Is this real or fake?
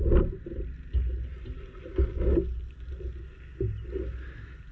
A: real